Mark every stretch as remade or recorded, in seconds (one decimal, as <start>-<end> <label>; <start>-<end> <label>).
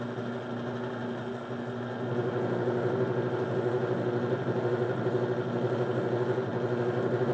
0.0-7.3 recorded